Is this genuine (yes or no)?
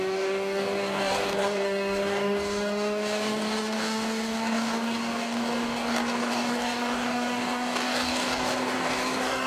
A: no